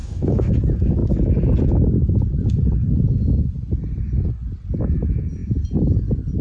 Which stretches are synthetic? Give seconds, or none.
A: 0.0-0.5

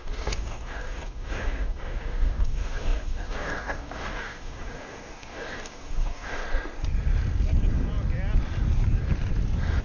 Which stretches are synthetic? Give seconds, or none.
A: 0.0-6.4

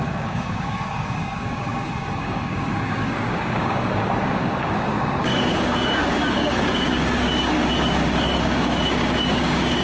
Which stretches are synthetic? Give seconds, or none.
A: 0.0-9.8

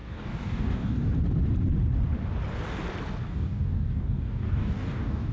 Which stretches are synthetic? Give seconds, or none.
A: 0.0-1.1; 3.2-5.3

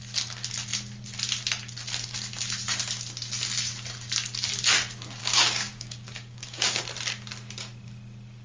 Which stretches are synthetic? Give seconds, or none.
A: 5.2-6.8

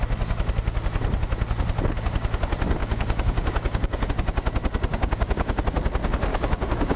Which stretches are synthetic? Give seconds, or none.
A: 2.8-4.1; 4.9-5.6; 6.3-7.0